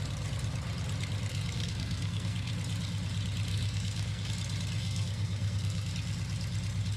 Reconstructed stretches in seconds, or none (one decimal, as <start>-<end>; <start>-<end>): 1.3-2.5; 3.5-4.3; 4.8-5.9